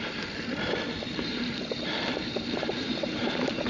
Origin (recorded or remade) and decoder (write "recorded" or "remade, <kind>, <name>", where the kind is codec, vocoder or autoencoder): remade, vocoder, BigVGAN v2